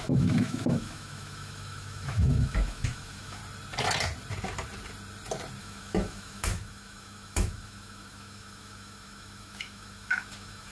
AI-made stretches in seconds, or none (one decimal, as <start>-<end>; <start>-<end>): 0.0-3.4; 5.6-10.7